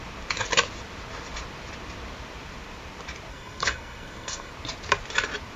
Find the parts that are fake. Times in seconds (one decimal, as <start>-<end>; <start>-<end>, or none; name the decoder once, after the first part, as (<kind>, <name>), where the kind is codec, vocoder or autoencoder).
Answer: 3.3-4.5 (codec, SNAC)